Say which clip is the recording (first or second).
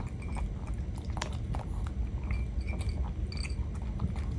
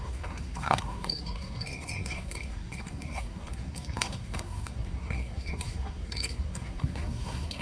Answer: first